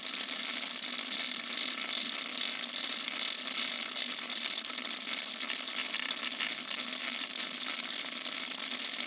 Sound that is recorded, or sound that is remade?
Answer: recorded